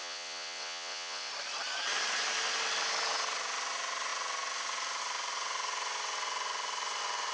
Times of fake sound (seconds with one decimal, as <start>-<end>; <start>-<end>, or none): 0.0-1.3

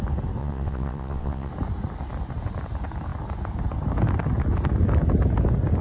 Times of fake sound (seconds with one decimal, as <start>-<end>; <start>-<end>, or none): 0.4-1.5

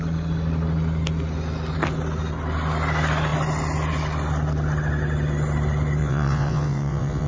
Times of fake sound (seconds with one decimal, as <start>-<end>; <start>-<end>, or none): 6.0-7.3

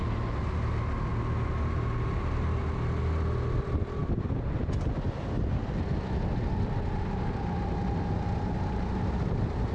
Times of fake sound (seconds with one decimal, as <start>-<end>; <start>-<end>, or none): none

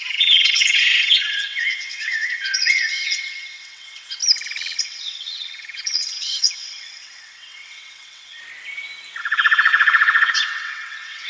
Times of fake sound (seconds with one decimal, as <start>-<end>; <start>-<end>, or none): 0.0-4.2; 4.8-8.4; 9.2-11.3

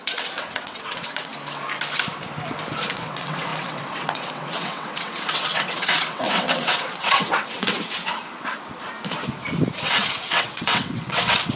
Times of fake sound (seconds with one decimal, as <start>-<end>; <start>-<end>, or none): 0.0-1.3; 2.9-8.0; 9.7-11.6

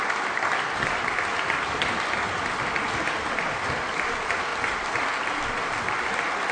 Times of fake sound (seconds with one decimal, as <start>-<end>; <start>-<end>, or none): none